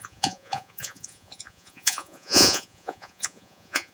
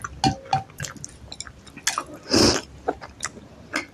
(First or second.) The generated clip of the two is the first